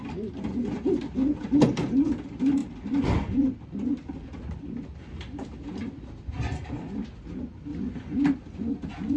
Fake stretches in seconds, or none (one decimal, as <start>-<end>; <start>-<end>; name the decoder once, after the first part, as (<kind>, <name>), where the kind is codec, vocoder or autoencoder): none